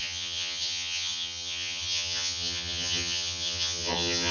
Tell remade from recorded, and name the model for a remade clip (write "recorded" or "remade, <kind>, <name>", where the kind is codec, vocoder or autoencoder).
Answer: remade, vocoder, HiFi-GAN